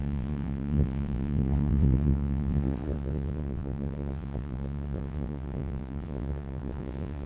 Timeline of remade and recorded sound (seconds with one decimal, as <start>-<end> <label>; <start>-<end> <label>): 0.0-7.3 remade